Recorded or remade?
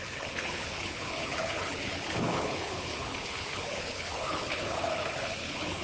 remade